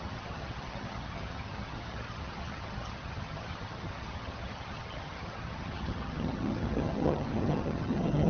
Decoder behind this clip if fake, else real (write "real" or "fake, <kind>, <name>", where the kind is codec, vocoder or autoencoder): fake, vocoder, HiFi-GAN